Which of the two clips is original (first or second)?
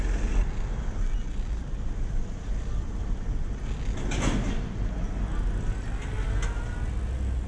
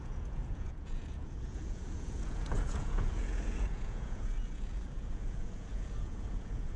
first